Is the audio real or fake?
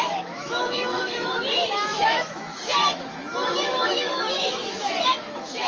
fake